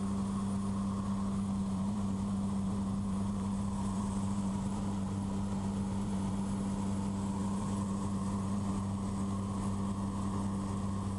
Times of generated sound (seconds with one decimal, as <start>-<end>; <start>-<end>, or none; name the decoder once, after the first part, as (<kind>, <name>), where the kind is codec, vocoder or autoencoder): 1.6-6.3 (vocoder, BigVGAN v2); 7.4-8.7